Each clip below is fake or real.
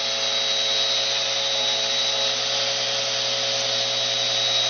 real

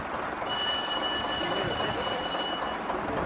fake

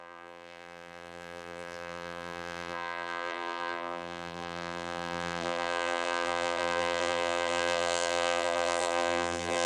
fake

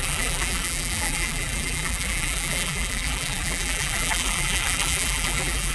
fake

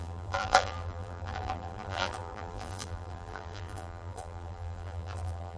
fake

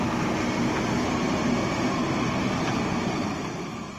fake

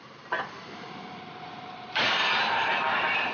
fake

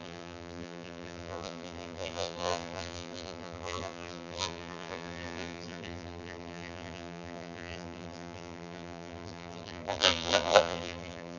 fake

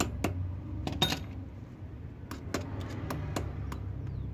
real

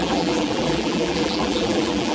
fake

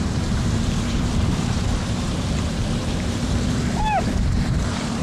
fake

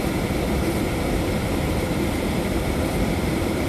fake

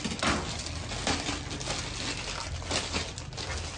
real